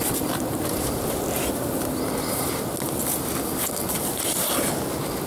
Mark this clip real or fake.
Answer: real